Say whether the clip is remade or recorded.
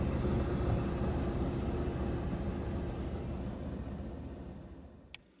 recorded